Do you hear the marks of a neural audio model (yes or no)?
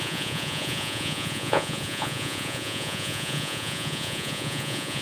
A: yes